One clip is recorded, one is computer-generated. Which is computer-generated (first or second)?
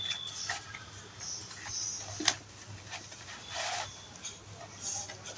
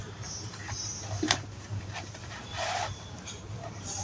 second